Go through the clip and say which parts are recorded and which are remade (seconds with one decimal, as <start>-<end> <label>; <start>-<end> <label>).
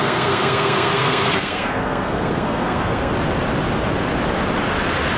0.0-3.1 remade; 3.1-5.2 recorded